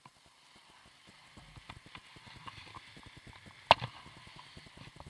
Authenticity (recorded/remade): recorded